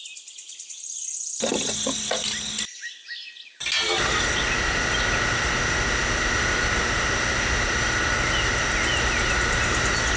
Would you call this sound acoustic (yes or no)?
yes